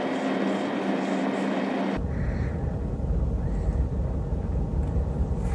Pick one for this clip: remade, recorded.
recorded